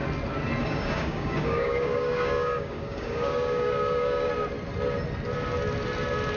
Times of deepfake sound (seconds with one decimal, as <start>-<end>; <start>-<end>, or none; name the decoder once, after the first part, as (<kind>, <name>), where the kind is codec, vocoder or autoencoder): 0.6-4.3 (codec, DAC)